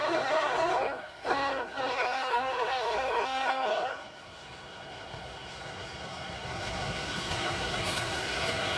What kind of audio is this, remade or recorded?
remade